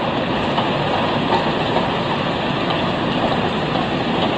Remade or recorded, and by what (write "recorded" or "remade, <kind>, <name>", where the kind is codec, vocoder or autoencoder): recorded